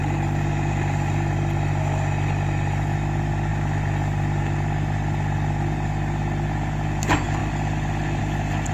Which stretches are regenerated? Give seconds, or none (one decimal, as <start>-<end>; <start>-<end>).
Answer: none